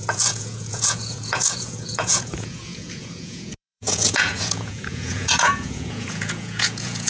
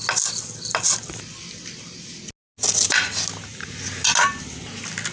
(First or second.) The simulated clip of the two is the first